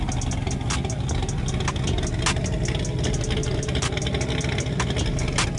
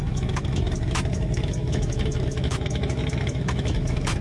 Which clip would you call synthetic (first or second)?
second